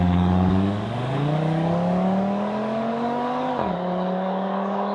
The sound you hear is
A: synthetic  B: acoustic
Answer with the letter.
A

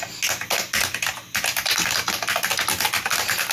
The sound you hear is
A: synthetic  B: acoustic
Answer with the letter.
B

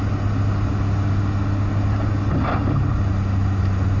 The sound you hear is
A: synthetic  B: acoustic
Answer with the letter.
B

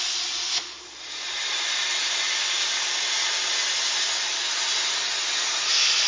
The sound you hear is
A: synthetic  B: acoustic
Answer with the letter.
B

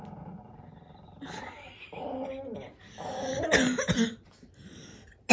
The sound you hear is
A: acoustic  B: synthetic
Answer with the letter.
A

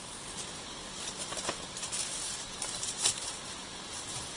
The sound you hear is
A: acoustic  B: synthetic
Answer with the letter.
A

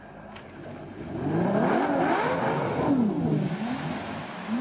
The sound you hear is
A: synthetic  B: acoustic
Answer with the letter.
B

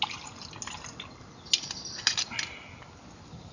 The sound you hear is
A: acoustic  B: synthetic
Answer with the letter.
A